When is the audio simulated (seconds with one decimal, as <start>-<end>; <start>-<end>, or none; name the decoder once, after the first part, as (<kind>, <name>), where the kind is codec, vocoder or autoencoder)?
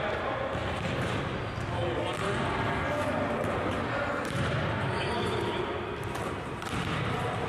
none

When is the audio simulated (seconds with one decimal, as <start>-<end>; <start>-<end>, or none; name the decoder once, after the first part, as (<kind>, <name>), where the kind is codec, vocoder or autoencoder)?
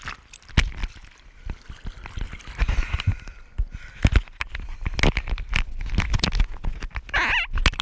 none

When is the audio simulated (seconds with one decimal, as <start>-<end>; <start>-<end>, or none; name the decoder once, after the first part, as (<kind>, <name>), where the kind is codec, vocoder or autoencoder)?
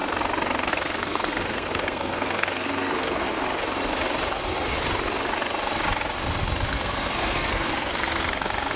0.7-3.4 (codec, SNAC); 6.7-8.8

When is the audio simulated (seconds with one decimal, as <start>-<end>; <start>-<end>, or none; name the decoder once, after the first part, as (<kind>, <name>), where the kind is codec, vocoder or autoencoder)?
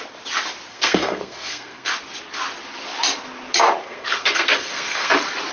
0.7-1.9 (codec, SNAC); 3.8-5.1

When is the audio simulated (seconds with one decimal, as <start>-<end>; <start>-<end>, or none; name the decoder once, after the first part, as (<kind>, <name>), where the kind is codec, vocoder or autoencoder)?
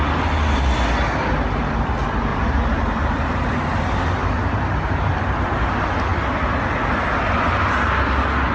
2.3-3.5 (vocoder, BigVGAN v2); 4.2-5.6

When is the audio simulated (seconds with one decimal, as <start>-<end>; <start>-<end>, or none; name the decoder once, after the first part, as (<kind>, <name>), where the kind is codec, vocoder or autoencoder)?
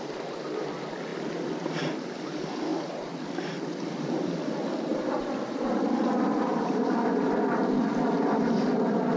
2.7-4.5 (vocoder, BigVGAN v2); 4.9-5.8; 6.5-7.5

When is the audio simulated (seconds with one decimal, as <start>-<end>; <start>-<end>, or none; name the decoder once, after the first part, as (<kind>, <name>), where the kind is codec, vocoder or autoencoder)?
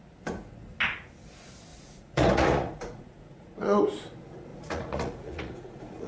1.7-3.8 (vocoder, Vocos); 4.5-6.1